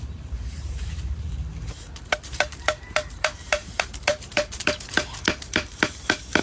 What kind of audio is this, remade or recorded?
remade